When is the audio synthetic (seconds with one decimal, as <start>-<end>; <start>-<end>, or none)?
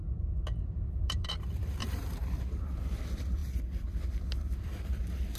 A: 0.6-5.4